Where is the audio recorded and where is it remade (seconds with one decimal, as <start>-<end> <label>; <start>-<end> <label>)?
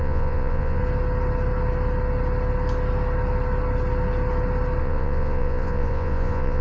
0.0-0.8 remade; 0.8-4.8 recorded; 4.8-6.6 remade